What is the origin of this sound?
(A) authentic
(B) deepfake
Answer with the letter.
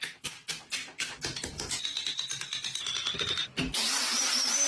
A